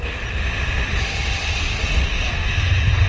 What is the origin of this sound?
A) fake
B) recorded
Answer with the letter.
A